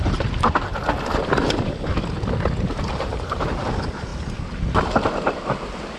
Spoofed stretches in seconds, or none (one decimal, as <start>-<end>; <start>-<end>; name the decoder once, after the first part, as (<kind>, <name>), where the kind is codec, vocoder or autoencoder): 0.0-0.7 (vocoder, BigVGAN v2); 2.9-4.1